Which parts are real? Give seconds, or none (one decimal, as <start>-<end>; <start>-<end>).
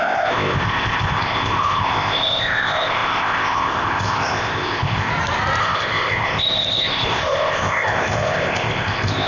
5.1-5.6